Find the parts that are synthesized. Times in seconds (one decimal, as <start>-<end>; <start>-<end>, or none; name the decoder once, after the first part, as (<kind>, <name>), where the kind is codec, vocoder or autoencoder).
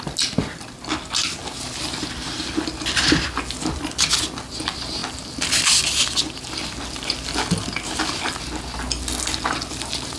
none